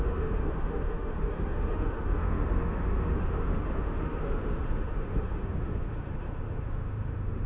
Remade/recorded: remade